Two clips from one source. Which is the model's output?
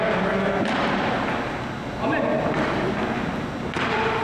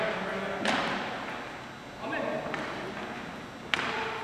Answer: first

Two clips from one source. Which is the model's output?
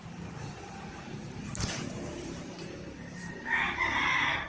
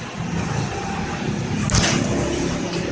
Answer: first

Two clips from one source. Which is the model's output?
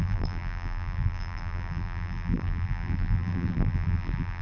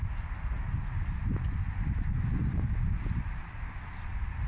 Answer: first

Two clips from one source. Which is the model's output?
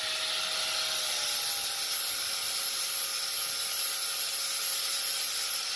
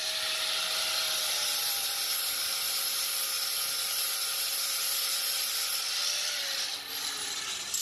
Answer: second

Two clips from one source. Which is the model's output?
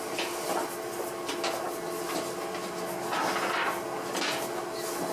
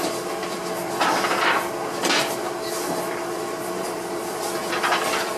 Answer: second